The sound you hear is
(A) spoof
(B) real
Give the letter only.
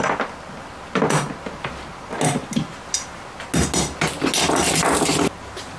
B